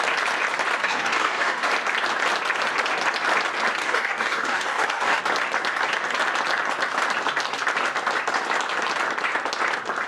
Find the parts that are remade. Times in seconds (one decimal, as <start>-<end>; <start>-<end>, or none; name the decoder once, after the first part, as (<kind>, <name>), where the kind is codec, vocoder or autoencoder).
0.8-1.7 (codec, DAC); 3.8-5.2